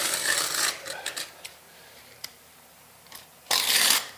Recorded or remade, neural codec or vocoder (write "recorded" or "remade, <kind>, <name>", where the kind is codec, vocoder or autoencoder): remade, vocoder, BigVGAN v2